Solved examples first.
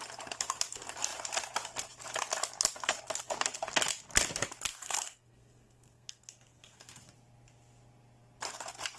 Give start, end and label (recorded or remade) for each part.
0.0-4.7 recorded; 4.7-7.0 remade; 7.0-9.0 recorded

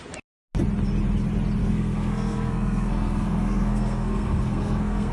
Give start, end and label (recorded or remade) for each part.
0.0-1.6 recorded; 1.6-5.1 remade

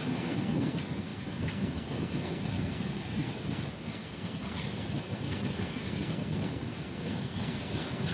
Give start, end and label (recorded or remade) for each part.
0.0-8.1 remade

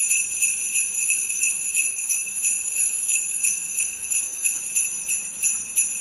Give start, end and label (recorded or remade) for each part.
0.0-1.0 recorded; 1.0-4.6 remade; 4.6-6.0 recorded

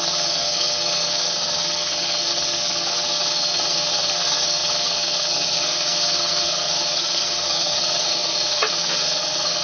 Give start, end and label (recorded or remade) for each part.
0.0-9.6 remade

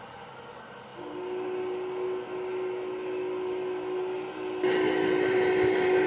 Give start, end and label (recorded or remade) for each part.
0.0-6.1 recorded